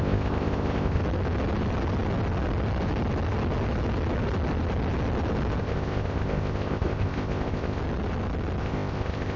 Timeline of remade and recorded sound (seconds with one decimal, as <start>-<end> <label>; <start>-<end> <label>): 0.0-1.0 remade; 1.0-5.6 recorded; 5.6-7.8 remade; 7.8-8.6 recorded; 8.6-9.4 remade